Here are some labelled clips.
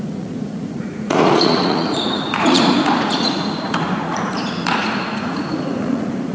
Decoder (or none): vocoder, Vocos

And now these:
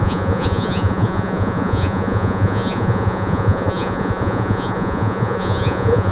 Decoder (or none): vocoder, Vocos